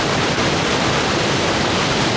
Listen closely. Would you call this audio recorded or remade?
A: recorded